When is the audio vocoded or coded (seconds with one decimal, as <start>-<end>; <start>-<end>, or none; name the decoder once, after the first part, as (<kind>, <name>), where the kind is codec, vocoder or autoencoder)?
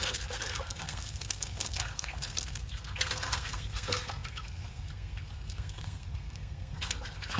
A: 0.0-7.4 (codec, SNAC)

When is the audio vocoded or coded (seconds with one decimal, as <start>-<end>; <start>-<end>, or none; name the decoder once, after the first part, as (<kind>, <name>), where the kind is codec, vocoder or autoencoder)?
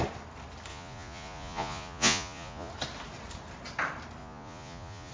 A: 0.7-2.7 (vocoder, Vocos); 4.2-5.1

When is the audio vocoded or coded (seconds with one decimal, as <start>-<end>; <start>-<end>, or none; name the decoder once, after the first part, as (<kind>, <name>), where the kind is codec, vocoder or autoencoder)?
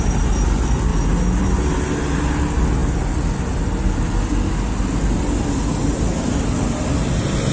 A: none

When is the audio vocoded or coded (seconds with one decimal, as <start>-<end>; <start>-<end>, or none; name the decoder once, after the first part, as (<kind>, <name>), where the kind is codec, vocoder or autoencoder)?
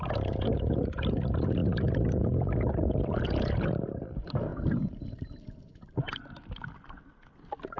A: 1.6-2.2 (vocoder, BigVGAN v2); 4.5-5.7